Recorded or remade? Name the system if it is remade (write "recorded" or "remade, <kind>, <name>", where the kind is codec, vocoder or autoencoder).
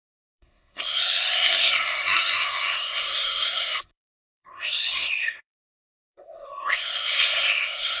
remade, codec, SNAC